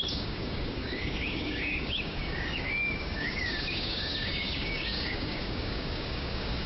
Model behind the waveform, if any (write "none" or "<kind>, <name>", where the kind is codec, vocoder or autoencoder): codec, DAC